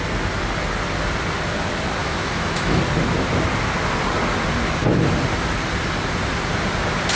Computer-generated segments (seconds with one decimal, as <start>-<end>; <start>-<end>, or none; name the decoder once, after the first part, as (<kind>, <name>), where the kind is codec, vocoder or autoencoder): 2.0-2.8 (autoencoder, DAC-VAE)